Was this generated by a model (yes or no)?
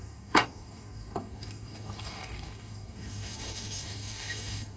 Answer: yes